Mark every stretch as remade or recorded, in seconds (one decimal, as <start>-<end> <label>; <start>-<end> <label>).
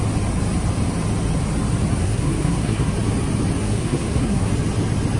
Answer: 0.0-2.0 recorded; 2.0-2.9 remade; 2.9-3.6 recorded; 3.6-4.5 remade; 4.5-5.2 recorded